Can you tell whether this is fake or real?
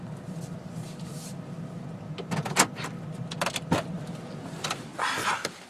fake